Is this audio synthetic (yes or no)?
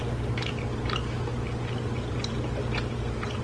no